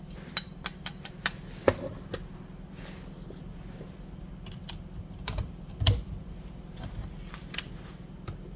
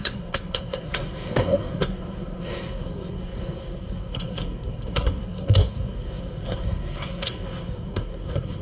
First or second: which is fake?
second